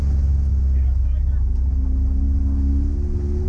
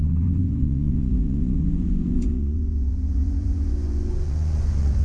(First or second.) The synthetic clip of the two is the second